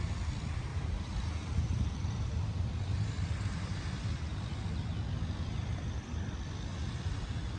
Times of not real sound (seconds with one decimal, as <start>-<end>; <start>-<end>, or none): 0.7-4.4; 6.7-7.6

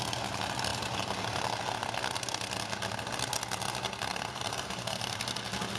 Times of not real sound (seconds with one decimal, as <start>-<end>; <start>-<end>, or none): 0.7-1.6; 4.1-5.2

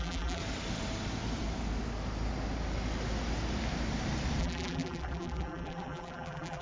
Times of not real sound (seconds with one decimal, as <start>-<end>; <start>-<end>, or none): 0.0-0.4; 4.4-6.6

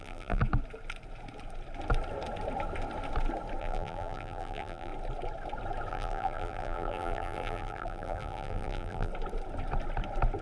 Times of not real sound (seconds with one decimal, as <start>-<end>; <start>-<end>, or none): 0.0-0.4; 3.6-4.9; 5.9-9.1

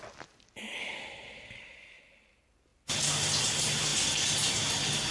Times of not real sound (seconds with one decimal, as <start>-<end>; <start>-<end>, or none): none